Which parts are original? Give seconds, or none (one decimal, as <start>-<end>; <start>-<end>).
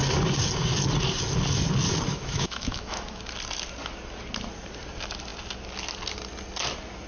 0.0-2.1; 3.2-7.1